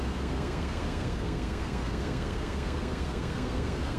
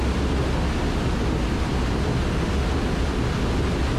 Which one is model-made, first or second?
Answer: first